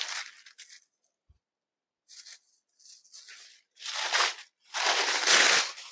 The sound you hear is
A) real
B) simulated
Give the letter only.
A